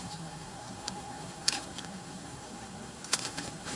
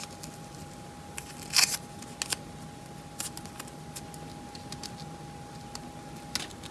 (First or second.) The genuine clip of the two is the second